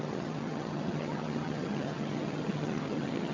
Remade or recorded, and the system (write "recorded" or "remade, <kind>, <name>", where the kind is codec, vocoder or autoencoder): remade, vocoder, HiFi-GAN